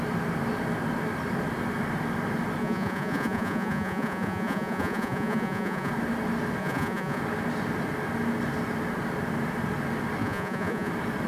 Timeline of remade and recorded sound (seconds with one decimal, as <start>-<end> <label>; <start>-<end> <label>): 0.0-2.6 recorded; 2.6-5.9 remade; 5.9-6.6 recorded; 6.6-7.2 remade; 7.2-10.2 recorded; 10.2-10.9 remade; 10.9-11.3 recorded